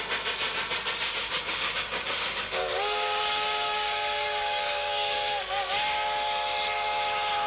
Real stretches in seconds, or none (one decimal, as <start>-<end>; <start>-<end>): 0.0-1.2; 5.7-7.5